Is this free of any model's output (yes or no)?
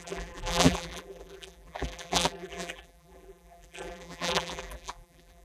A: no